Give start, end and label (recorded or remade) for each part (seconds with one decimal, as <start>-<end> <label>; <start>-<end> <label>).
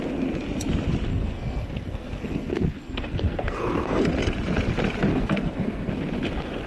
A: 0.0-1.1 recorded; 1.1-4.0 remade; 4.0-5.1 recorded; 5.1-5.9 remade; 5.9-6.7 recorded